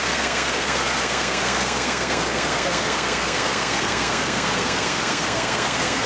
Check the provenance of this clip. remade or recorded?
remade